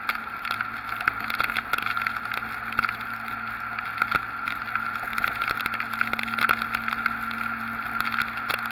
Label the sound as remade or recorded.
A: recorded